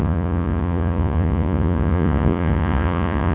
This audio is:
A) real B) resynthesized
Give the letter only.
B